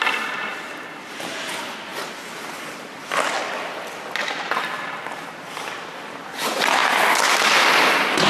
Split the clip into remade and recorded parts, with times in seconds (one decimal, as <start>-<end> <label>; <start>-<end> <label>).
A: 0.0-8.3 recorded